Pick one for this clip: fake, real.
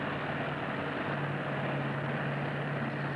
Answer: real